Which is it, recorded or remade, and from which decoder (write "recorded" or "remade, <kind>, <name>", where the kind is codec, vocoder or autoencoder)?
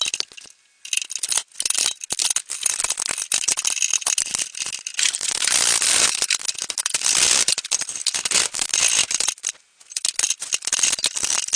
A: recorded